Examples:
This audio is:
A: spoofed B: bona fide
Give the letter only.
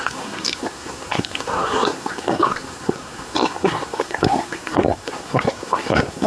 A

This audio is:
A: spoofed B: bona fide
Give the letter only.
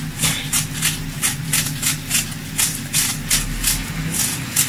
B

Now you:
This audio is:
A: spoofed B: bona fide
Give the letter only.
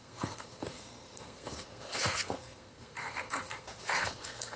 A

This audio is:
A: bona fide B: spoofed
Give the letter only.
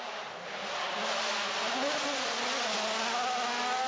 A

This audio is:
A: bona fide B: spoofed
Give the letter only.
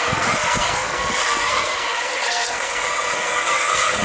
B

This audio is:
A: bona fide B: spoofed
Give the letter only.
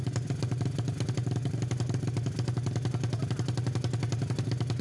A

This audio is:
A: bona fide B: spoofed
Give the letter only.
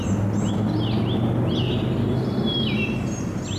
A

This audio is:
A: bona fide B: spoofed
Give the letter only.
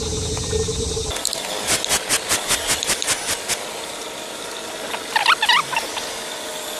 A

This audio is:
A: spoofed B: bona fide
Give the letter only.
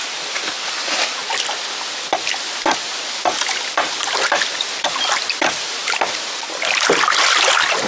B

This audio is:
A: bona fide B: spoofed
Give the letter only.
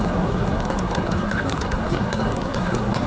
B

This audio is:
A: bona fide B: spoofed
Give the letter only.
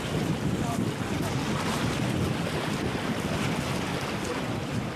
A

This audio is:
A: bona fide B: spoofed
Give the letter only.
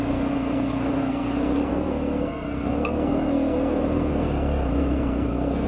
B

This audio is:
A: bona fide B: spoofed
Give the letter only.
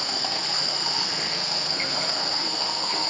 B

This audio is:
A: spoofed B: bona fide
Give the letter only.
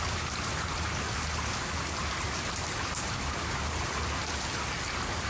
B